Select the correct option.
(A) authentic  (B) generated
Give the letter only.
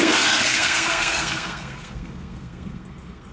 B